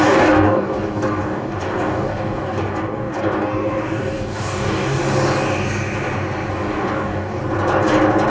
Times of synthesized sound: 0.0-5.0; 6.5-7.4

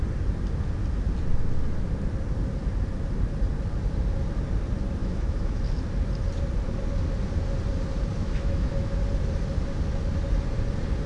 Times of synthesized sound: 5.0-5.6; 8.2-9.0

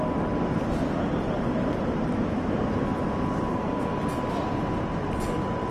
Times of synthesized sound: 3.5-4.0

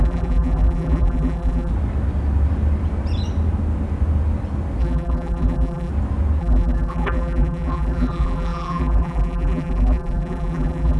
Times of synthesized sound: 0.0-1.7; 4.8-5.9; 6.4-11.0

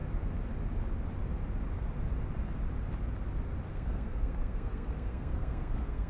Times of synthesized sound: 3.7-6.1

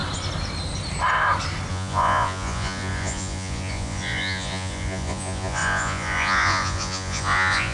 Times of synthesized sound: 1.7-7.7